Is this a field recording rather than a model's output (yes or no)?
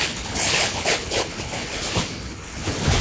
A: no